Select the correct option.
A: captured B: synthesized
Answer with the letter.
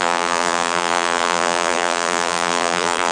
B